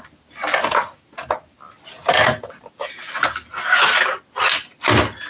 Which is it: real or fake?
real